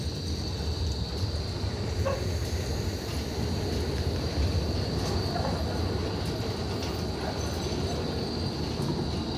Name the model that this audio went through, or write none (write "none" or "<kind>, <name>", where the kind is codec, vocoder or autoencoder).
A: none